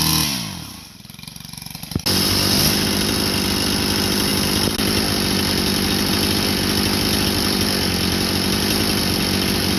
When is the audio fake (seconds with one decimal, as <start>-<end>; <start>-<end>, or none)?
none